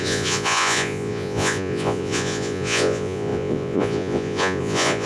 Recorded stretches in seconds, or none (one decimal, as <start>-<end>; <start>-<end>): none